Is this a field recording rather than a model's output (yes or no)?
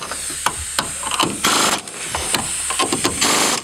yes